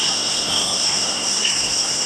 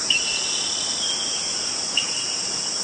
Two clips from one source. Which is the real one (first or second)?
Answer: second